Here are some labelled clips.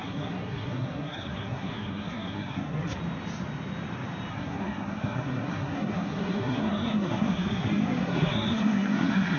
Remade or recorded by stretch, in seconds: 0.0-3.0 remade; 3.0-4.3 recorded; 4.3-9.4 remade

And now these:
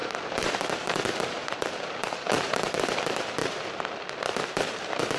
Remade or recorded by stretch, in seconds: 0.0-2.7 remade; 2.7-3.4 recorded; 3.4-4.0 remade; 4.0-5.2 recorded

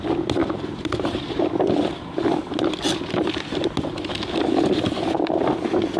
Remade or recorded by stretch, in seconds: 0.0-0.4 recorded; 0.4-1.5 remade; 1.5-6.0 recorded

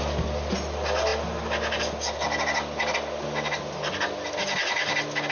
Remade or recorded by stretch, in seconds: 0.0-5.3 recorded